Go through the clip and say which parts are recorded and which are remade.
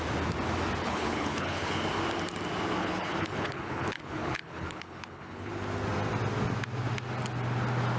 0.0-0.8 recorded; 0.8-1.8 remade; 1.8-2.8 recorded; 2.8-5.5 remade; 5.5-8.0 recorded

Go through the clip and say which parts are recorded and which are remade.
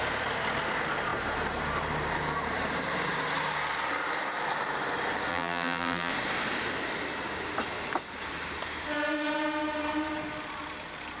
0.0-5.3 recorded; 5.3-6.1 remade; 6.1-11.2 recorded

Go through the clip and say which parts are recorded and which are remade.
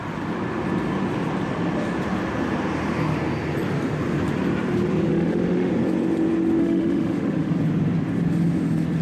0.0-5.1 recorded; 5.1-5.7 remade; 5.7-6.6 recorded; 6.6-7.5 remade; 7.5-9.0 recorded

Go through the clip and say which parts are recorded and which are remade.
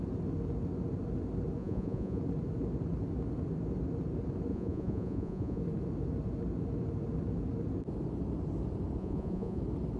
0.0-1.6 recorded; 1.6-2.2 remade; 2.2-4.5 recorded; 4.5-5.6 remade; 5.6-9.0 recorded; 9.0-9.6 remade; 9.6-10.0 recorded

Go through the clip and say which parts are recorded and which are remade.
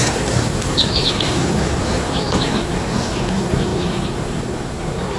0.0-5.2 remade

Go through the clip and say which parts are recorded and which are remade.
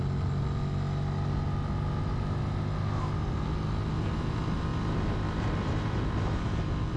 0.0-7.0 recorded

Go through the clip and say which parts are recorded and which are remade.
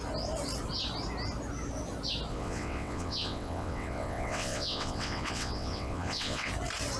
0.0-2.3 recorded; 2.3-6.5 remade; 6.5-7.0 recorded